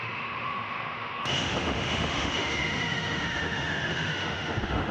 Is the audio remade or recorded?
remade